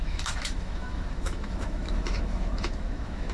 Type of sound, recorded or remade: remade